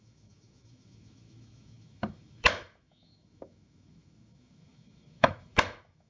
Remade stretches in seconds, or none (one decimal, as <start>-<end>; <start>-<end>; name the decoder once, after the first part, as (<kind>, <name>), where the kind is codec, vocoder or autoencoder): 0.0-6.1 (autoencoder, DAC-VAE)

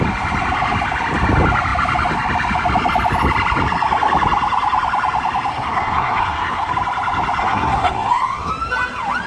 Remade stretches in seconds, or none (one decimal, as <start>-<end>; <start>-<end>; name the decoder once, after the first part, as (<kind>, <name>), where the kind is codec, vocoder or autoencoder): 5.5-6.7 (codec, SNAC); 7.4-8.5

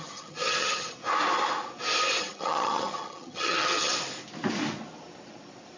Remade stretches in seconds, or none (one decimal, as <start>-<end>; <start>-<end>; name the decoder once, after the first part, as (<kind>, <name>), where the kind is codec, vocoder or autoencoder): 0.0-1.0 (vocoder, HiFi-GAN); 2.2-3.9

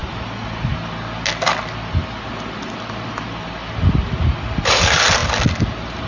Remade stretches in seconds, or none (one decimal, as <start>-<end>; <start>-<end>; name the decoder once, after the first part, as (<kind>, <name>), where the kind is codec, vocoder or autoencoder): none

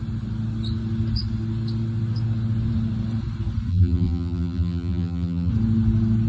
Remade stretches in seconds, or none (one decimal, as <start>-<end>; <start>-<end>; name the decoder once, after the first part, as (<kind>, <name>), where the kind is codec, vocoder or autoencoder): 3.7-5.5 (vocoder, BigVGAN v2)